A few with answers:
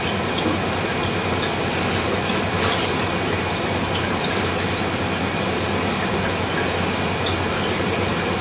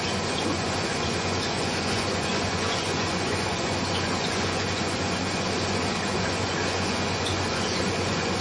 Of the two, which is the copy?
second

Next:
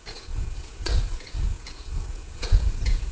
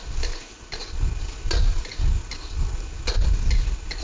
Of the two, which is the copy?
first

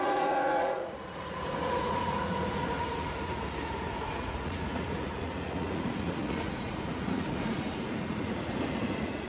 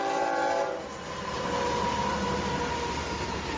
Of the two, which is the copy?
first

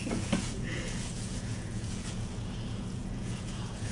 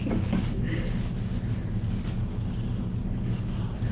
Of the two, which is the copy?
first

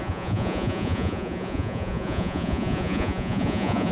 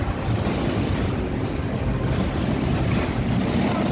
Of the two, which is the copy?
first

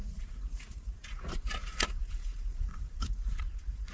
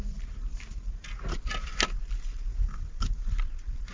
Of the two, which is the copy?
first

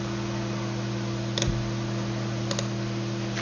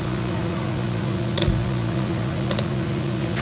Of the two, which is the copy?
second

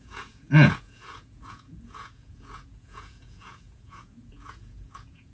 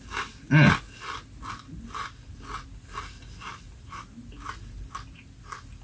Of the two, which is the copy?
first